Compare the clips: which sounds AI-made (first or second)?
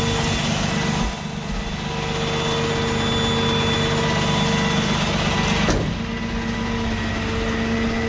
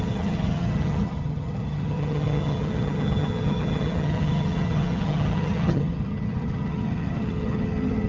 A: second